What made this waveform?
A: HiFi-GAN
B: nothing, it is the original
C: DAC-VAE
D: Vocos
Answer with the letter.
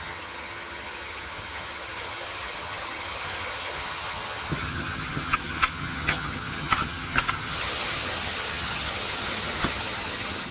A